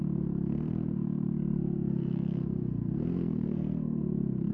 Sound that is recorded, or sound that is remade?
remade